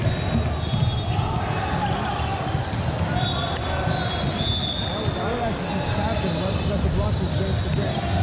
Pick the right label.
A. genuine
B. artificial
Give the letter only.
A